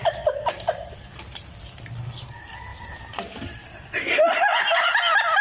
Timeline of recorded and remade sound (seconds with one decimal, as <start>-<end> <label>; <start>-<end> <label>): 0.0-5.4 recorded